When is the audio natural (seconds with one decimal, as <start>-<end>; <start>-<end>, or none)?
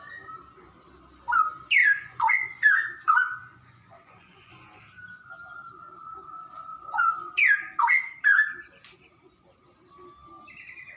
0.0-1.8; 4.8-6.7; 7.3-11.0